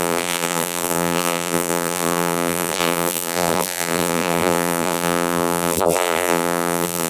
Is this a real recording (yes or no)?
no